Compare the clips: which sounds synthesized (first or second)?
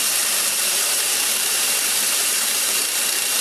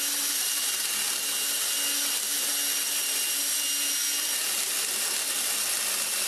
first